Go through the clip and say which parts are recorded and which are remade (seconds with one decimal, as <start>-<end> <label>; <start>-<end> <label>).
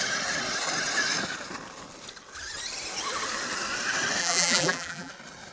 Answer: 0.0-4.2 recorded; 4.2-5.1 remade; 5.1-5.5 recorded